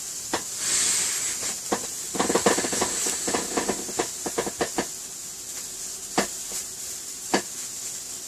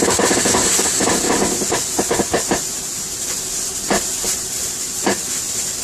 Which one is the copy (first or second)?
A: second